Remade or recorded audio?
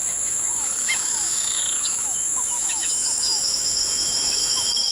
remade